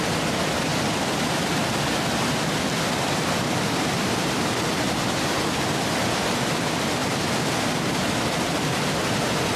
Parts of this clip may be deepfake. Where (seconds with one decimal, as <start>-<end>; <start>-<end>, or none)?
none